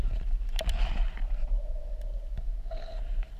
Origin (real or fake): real